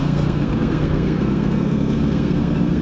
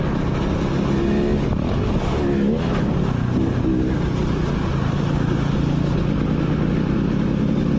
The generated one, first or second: first